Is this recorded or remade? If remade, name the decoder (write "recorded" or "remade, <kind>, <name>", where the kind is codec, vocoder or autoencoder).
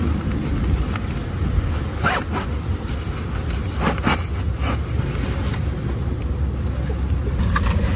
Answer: recorded